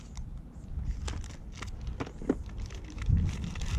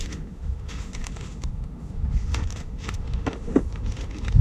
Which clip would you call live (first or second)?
first